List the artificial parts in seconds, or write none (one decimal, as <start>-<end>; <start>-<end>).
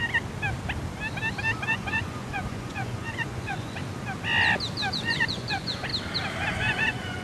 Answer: 1.7-3.8; 4.9-5.9; 6.5-7.2